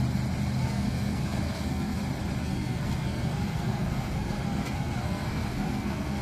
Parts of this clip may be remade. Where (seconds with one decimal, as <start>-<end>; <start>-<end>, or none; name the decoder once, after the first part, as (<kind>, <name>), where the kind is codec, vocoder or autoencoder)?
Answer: 0.6-2.0 (codec, SNAC); 2.4-6.2